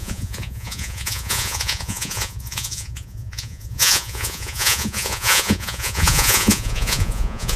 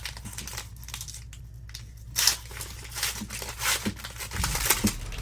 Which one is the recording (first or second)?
second